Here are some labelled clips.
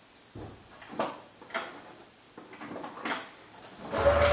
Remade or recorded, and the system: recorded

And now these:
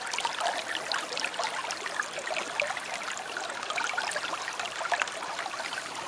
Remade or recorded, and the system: recorded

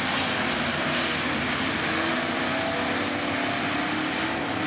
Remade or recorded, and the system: recorded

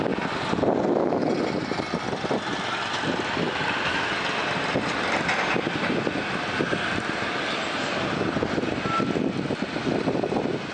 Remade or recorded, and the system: recorded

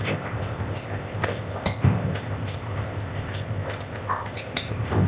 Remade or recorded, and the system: remade, codec, ZipCodec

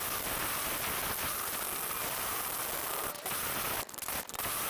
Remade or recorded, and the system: recorded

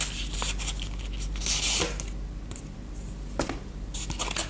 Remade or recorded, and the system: recorded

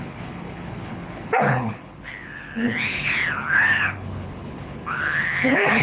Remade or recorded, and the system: remade, codec, HILCodec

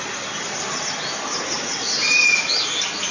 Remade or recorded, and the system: recorded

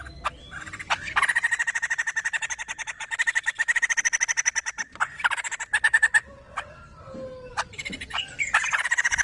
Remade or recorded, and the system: recorded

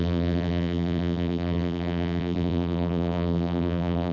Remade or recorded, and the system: remade, vocoder, BigVGAN v2